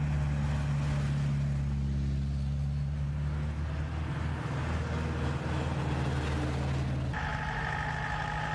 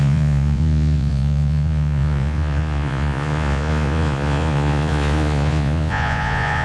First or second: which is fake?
second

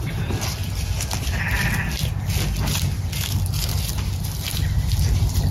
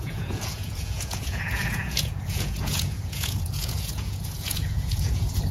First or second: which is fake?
second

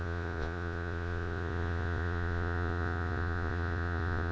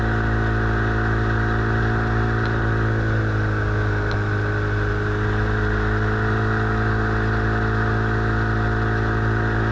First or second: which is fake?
first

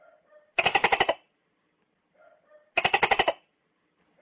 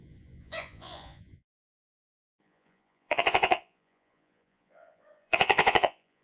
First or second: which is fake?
second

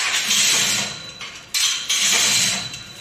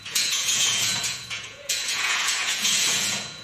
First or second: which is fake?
second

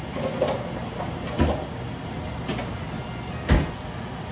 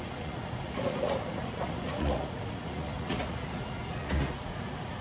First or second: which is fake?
second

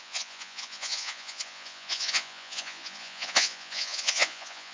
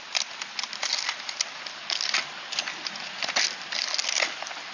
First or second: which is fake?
first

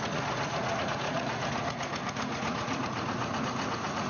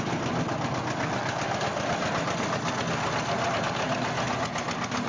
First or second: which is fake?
first